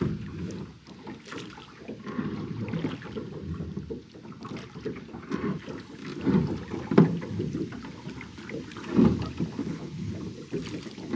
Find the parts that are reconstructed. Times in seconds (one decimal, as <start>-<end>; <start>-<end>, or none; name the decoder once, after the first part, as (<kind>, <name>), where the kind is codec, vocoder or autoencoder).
9.6-10.1 (codec, HILCodec)